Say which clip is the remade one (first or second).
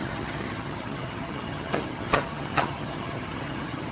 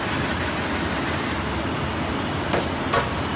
first